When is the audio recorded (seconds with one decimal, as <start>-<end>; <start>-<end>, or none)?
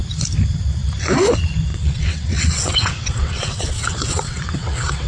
0.0-1.7